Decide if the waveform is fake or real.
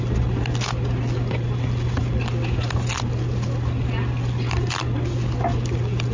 real